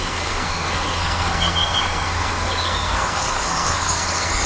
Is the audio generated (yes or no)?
yes